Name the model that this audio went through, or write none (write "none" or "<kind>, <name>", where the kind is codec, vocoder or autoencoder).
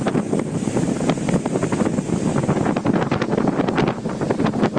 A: none